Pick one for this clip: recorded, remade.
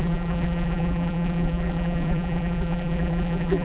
remade